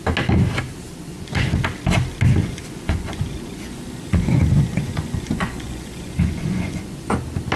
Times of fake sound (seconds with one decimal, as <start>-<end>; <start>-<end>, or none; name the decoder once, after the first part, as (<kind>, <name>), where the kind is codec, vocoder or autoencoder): 1.1-1.6 (vocoder, Vocos); 2.4-7.0